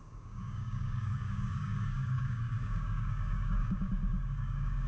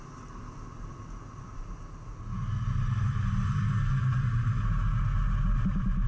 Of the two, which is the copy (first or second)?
first